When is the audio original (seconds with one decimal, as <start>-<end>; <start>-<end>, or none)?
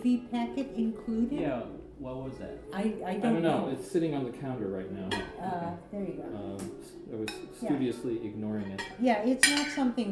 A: 0.0-2.2; 5.5-10.1